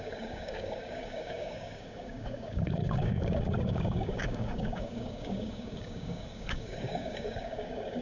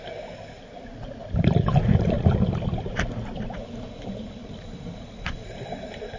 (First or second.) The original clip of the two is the second